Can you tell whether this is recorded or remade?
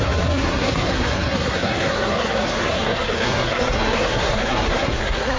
remade